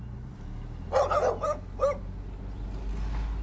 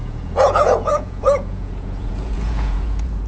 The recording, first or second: first